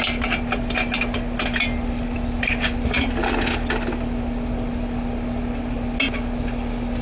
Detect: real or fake real